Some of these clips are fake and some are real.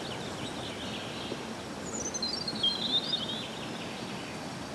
real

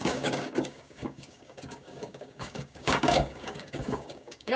fake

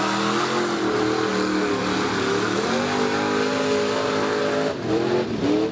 real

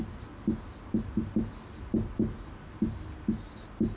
real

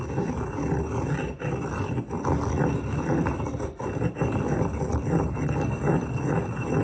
real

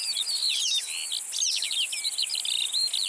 real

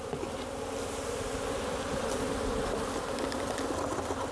real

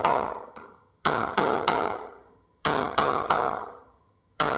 fake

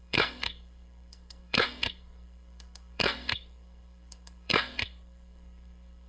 fake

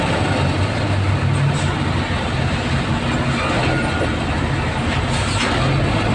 real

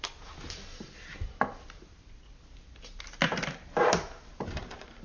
fake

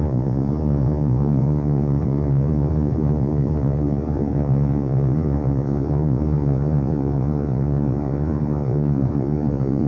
fake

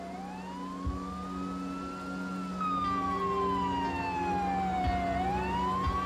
real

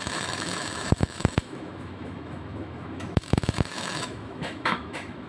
fake